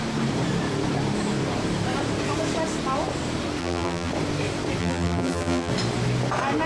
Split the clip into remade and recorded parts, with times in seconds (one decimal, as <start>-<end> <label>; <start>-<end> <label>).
0.0-3.6 recorded; 3.6-4.1 remade; 4.1-4.8 recorded; 4.8-5.7 remade; 5.7-6.7 recorded